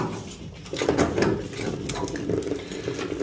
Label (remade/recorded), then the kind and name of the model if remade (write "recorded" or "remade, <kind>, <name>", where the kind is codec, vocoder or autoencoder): recorded